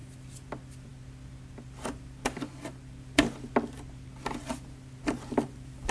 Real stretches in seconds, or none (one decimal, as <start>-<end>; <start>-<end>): 0.0-5.9